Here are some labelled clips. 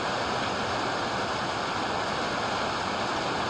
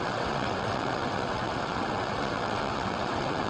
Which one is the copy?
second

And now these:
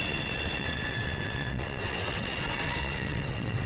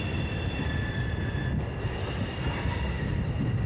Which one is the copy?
first